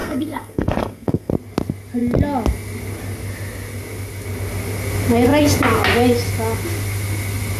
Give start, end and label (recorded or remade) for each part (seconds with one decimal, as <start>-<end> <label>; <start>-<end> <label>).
0.0-1.3 remade; 1.3-7.6 recorded